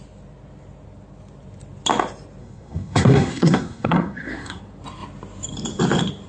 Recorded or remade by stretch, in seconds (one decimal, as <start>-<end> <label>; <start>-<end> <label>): 0.0-2.4 recorded; 2.4-4.6 remade; 4.6-6.3 recorded